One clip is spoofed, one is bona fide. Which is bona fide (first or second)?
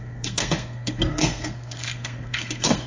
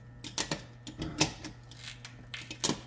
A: second